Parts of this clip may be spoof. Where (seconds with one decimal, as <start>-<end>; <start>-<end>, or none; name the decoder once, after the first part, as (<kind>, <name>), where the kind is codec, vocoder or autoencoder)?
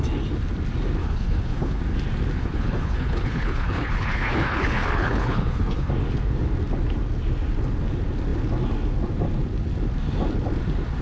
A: 1.0-1.8 (codec, HILCodec); 2.4-5.9